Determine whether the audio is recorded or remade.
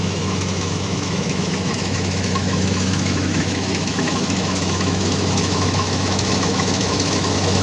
remade